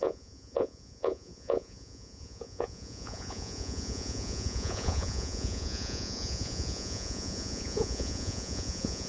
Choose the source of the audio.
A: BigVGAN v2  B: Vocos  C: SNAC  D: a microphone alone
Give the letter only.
B